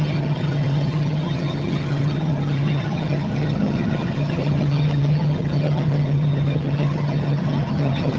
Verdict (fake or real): fake